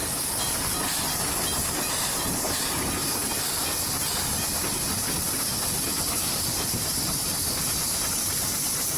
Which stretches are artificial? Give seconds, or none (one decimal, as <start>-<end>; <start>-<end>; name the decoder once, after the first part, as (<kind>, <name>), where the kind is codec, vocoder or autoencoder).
3.0-7.6 (vocoder, BigVGAN v2)